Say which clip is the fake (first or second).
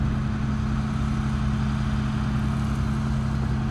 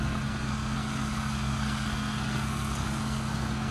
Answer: second